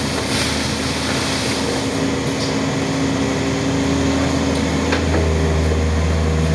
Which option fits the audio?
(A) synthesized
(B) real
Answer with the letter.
B